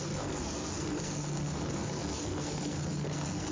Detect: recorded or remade remade